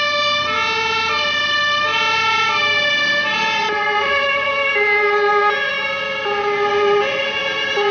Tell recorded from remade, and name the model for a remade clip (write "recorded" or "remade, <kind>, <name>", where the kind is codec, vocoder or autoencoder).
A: recorded